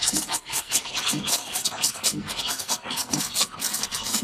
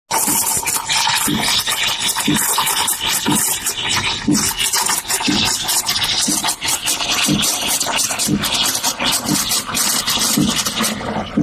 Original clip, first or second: second